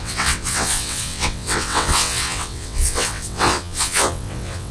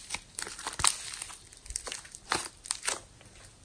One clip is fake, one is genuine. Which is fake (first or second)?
first